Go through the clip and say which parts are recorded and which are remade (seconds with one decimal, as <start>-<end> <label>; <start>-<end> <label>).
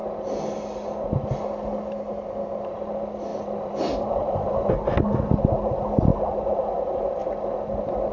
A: 0.0-3.3 recorded; 3.3-4.7 remade; 4.7-8.1 recorded